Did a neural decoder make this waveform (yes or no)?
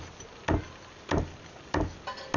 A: no